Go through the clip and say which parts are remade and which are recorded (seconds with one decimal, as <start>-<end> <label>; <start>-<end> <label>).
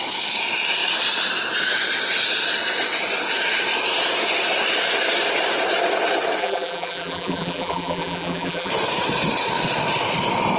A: 0.0-6.4 recorded; 6.4-8.7 remade; 8.7-10.6 recorded